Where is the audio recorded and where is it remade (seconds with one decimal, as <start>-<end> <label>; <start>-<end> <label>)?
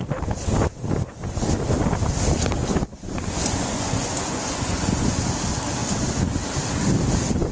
0.0-2.7 recorded; 2.7-5.2 remade; 5.2-7.5 recorded